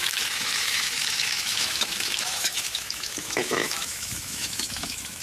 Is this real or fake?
fake